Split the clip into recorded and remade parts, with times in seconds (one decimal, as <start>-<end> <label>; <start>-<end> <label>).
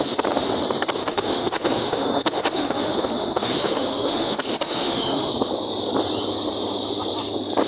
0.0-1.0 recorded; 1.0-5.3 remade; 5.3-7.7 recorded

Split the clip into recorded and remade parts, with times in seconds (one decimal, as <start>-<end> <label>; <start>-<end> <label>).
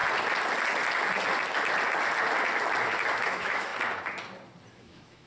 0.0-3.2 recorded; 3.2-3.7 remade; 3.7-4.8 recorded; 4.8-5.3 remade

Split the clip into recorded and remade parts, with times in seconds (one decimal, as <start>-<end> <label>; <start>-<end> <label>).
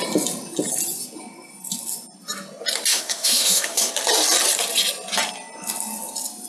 0.0-2.9 recorded; 2.9-3.9 remade; 3.9-6.5 recorded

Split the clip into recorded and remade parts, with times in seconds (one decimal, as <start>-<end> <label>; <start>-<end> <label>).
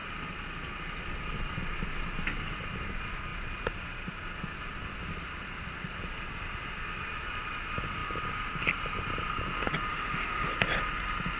0.0-9.9 recorded; 9.9-10.5 remade; 10.5-11.4 recorded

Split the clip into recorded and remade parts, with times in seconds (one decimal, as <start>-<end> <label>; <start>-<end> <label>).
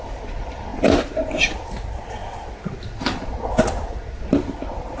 0.0-5.0 recorded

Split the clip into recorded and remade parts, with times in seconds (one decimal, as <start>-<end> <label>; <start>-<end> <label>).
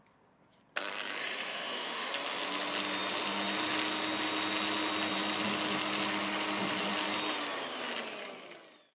0.0-1.2 recorded; 1.2-2.1 remade; 2.1-8.9 recorded